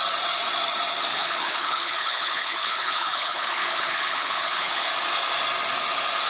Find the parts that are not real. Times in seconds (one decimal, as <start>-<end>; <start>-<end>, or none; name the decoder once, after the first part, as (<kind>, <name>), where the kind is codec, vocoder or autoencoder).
1.1-4.9 (codec, HILCodec)